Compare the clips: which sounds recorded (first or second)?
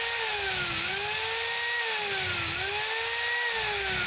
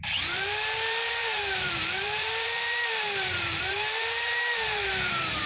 first